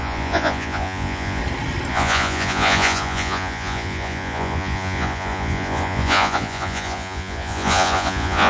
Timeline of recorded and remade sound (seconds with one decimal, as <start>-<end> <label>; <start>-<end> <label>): 0.0-1.4 remade; 1.4-1.9 recorded; 1.9-8.5 remade